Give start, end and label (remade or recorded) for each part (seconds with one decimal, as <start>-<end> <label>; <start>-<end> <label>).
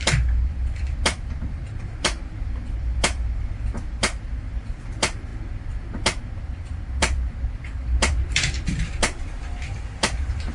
0.0-5.3 remade; 5.3-6.2 recorded; 6.2-10.5 remade